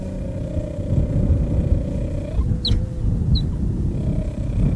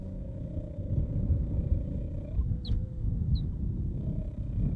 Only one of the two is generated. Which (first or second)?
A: second